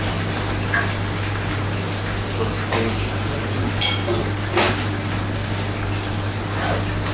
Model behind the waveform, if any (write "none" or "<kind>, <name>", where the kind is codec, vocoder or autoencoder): none